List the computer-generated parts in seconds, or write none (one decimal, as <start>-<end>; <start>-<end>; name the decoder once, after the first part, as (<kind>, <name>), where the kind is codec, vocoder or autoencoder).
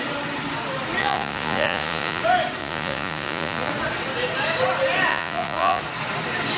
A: 1.0-2.2 (vocoder, Vocos); 2.6-3.7; 5.1-5.8